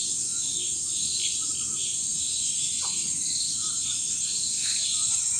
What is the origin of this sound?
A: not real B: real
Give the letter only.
B